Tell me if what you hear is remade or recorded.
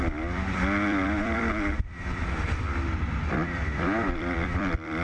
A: remade